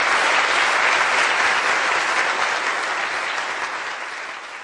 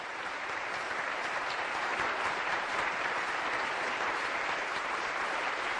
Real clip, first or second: first